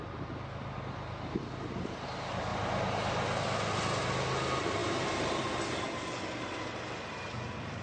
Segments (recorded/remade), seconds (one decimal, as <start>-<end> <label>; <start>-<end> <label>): 0.0-7.8 recorded